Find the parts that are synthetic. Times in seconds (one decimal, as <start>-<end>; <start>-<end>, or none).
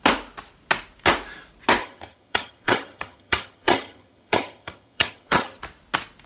1.8-5.6